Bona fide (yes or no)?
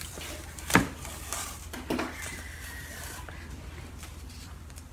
no